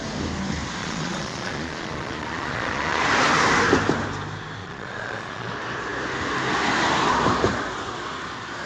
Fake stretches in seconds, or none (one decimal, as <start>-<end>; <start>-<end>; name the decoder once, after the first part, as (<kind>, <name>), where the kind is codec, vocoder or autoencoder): 0.8-3.0 (vocoder, Vocos); 4.6-5.5